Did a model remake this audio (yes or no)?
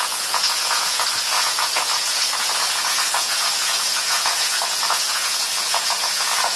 yes